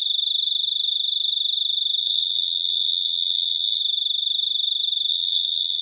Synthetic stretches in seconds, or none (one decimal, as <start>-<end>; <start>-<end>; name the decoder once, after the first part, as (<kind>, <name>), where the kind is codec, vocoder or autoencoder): 2.0-3.8 (vocoder, Vocos); 5.1-5.8